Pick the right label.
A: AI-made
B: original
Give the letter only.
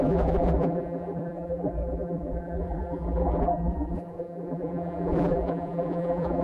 A